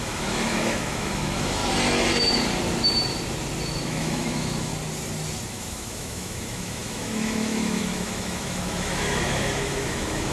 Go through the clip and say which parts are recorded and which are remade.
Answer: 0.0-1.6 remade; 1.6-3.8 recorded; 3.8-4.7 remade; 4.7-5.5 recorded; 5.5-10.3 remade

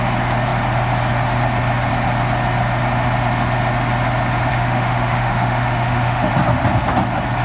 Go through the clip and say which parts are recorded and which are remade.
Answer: 0.0-4.5 recorded; 4.5-6.3 remade; 6.3-7.4 recorded

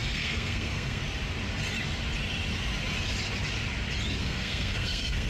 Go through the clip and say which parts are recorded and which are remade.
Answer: 0.0-1.0 remade; 1.0-4.2 recorded; 4.2-5.3 remade